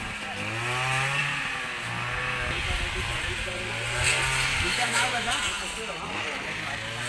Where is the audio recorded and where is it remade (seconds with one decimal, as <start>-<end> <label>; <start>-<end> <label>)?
0.0-4.5 recorded; 4.5-5.3 remade; 5.3-7.1 recorded